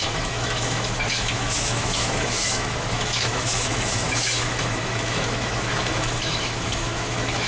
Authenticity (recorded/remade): remade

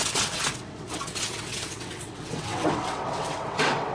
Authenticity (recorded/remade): remade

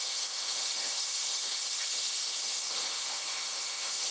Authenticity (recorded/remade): remade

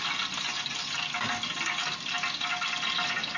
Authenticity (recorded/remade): recorded